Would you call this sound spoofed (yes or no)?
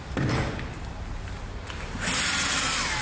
no